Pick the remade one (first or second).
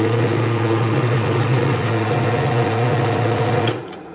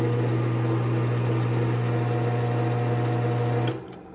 first